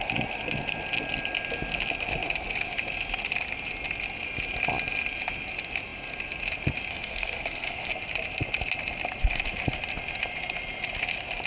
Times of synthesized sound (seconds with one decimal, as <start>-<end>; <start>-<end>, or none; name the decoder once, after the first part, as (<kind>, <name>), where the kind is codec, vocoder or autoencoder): 6.9-7.9 (codec, SNAC)